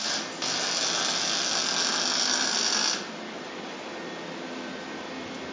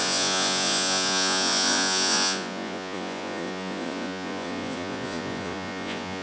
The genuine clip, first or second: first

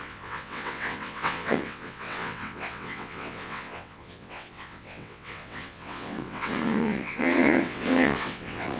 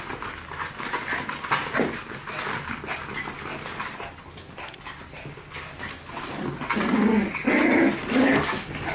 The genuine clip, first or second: second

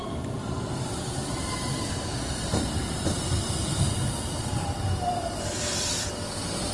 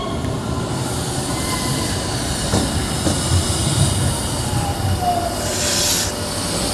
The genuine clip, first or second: second